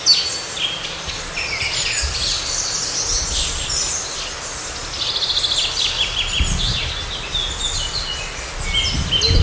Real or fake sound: real